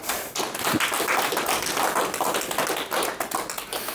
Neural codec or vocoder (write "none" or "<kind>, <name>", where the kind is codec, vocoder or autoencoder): none